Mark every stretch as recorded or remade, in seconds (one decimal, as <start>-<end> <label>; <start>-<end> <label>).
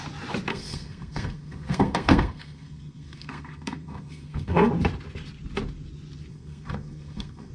0.0-0.5 recorded; 0.5-4.7 remade; 4.7-6.3 recorded; 6.3-7.5 remade